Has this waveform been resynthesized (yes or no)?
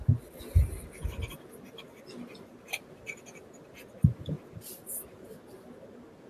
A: no